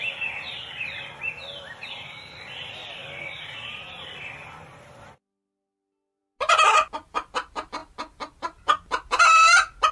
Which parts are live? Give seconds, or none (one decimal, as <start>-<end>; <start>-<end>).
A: 0.0-9.9